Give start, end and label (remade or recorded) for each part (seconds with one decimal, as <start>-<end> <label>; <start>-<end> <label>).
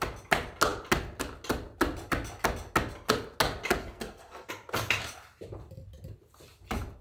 0.0-3.8 recorded; 3.8-4.5 remade; 4.5-7.0 recorded